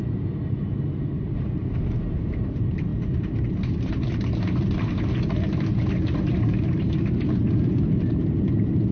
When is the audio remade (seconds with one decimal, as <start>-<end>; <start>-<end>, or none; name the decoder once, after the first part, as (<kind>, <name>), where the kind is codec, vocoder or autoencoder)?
0.0-8.9 (vocoder, BigVGAN v2)